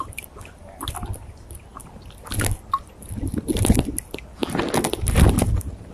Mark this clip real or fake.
real